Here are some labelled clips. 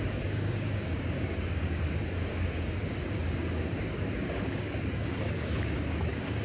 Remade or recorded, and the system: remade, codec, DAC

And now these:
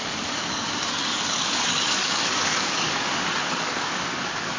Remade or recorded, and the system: remade, codec, DAC